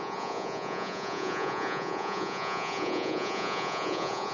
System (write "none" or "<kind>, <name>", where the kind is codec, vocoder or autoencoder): vocoder, Vocos